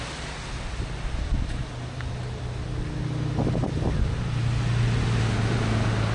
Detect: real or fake real